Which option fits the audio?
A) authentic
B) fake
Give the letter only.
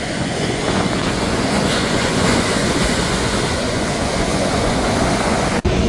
B